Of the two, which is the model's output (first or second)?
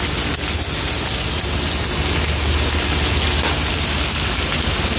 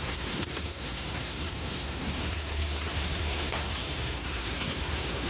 second